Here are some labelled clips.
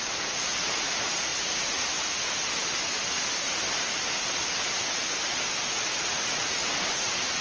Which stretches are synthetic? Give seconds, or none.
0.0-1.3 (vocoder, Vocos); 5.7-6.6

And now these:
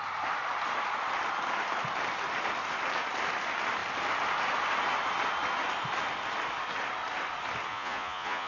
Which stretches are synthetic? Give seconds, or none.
7.7-8.5 (vocoder, Vocos)

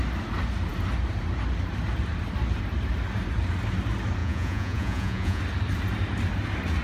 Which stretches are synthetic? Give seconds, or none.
4.2-5.4 (vocoder, Vocos)

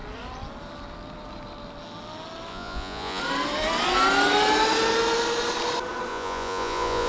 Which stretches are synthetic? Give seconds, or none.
2.5-3.2 (vocoder, Vocos); 6.1-7.1